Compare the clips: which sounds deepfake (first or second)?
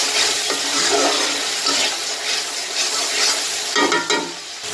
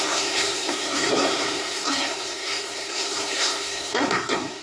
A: second